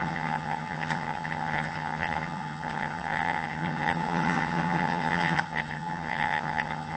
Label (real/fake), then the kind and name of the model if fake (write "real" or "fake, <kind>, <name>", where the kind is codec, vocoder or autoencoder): fake, vocoder, HiFi-GAN